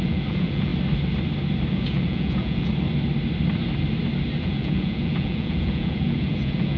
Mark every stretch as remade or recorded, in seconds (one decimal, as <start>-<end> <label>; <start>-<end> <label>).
0.0-0.7 remade; 0.7-1.7 recorded; 1.7-2.7 remade; 2.7-4.4 recorded; 4.4-6.8 remade